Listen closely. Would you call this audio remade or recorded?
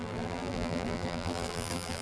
remade